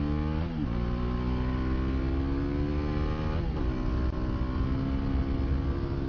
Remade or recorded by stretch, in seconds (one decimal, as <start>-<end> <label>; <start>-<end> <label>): 0.0-6.1 recorded